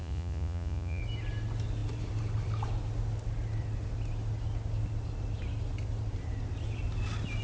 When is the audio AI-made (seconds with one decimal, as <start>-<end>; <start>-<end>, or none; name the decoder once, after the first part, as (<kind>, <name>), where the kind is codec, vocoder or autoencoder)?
0.0-1.0 (vocoder, Vocos)